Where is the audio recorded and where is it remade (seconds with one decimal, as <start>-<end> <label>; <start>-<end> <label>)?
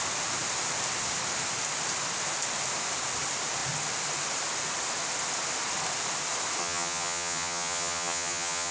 0.0-6.6 recorded; 6.6-8.7 remade